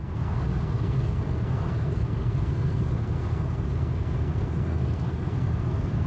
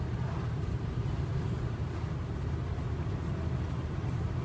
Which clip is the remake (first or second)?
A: first